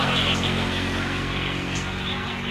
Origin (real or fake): fake